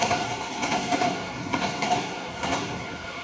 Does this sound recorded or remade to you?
remade